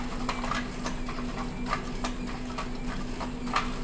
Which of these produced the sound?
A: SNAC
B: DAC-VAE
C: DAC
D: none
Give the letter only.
D